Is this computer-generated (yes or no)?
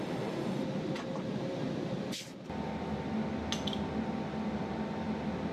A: no